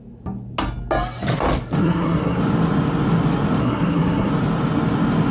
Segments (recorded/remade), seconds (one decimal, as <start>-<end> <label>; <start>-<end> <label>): 0.0-1.8 recorded; 1.8-2.4 remade; 2.4-3.6 recorded; 3.6-4.3 remade; 4.3-5.3 recorded